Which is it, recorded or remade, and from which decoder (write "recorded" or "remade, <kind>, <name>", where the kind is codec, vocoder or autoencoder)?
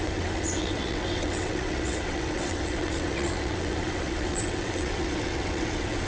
remade, vocoder, WaveNeXt